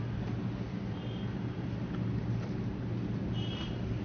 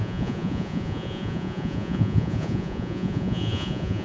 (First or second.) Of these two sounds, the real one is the first